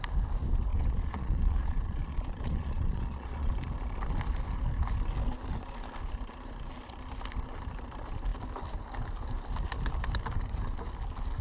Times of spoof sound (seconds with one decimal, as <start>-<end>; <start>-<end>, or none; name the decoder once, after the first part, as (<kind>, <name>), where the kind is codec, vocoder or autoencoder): 0.7-3.5 (vocoder, Vocos)